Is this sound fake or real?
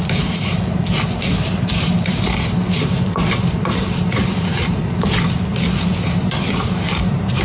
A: fake